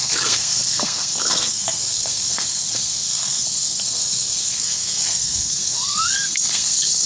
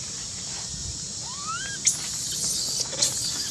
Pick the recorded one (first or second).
second